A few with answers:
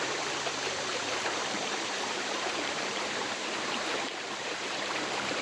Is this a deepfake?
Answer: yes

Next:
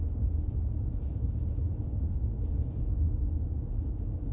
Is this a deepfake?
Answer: no